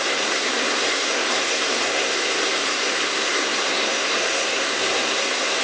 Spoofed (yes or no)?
yes